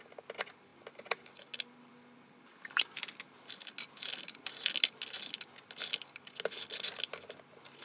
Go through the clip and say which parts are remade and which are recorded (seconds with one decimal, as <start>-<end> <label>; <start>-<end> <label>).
0.0-7.8 recorded